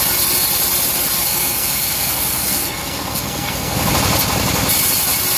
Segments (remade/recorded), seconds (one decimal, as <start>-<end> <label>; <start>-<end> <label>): 0.0-1.2 recorded; 1.2-3.9 remade; 3.9-5.4 recorded